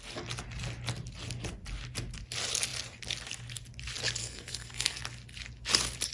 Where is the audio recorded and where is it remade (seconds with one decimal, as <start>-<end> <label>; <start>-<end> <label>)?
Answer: 0.0-4.2 recorded; 4.2-5.0 remade; 5.0-6.1 recorded